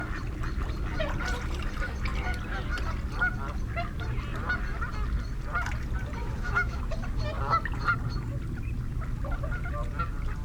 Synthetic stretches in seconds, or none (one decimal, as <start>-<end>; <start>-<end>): 6.2-6.8